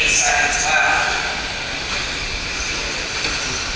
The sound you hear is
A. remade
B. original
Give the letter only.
B